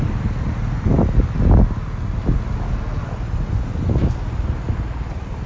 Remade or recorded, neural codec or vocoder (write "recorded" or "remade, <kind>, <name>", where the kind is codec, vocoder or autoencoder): recorded